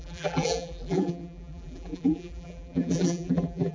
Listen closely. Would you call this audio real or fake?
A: fake